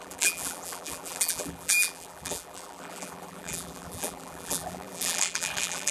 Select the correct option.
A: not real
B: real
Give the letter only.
A